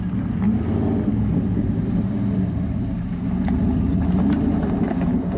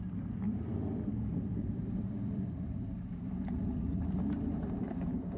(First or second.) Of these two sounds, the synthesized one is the second